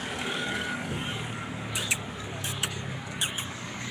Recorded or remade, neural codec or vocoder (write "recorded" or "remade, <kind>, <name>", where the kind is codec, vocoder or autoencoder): remade, codec, DAC